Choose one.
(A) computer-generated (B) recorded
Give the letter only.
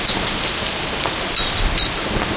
A